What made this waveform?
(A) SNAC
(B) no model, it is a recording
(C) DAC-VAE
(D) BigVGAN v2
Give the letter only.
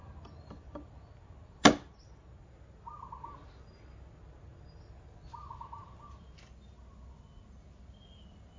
B